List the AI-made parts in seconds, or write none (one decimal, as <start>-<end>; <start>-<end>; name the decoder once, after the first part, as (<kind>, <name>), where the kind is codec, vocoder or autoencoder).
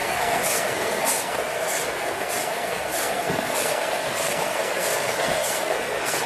0.0-6.3 (codec, SNAC)